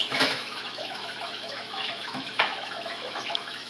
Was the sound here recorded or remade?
remade